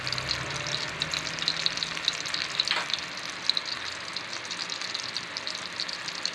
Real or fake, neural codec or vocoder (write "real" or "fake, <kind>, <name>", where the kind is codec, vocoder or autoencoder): real